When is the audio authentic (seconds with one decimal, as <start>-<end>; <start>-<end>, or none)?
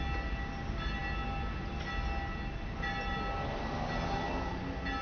0.0-5.0